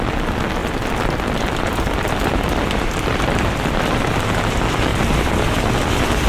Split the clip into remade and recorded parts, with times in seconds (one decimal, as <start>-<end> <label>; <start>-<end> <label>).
0.0-0.6 recorded; 0.6-4.1 remade; 4.1-4.9 recorded; 4.9-6.3 remade